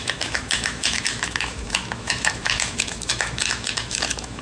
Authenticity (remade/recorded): remade